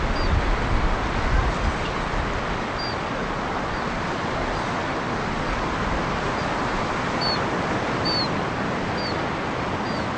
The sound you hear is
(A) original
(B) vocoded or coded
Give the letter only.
A